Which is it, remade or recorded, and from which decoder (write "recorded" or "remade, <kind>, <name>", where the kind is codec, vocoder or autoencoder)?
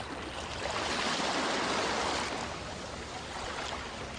recorded